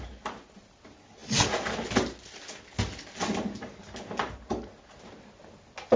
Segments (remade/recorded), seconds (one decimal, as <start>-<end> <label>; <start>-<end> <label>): 0.0-6.0 recorded